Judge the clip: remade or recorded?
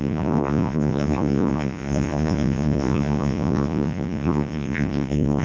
remade